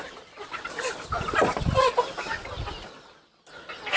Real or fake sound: real